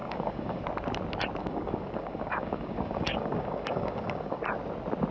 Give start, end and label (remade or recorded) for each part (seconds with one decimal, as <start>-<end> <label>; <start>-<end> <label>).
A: 0.0-0.6 remade; 0.6-1.4 recorded; 1.4-4.4 remade; 4.4-5.1 recorded

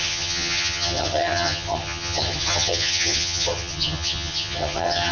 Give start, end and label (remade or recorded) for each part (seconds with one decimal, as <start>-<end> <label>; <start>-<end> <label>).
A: 0.0-5.1 remade